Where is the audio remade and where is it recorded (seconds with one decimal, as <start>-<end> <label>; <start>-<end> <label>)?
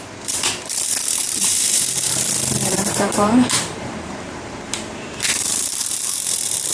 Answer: 0.0-1.2 recorded; 1.2-2.2 remade; 2.2-2.6 recorded; 2.6-6.7 remade